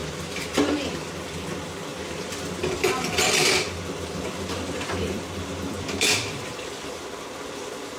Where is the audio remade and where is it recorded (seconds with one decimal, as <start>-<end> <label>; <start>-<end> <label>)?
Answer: 0.0-1.1 remade; 1.1-1.9 recorded; 1.9-6.5 remade; 6.5-8.0 recorded